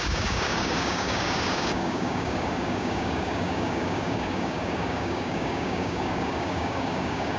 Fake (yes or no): yes